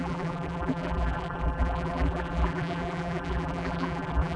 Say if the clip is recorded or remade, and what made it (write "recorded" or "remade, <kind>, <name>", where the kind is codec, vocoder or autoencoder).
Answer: remade, vocoder, BigVGAN v2